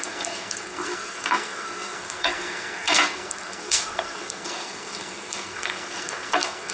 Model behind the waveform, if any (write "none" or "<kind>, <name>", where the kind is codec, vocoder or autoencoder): codec, SNAC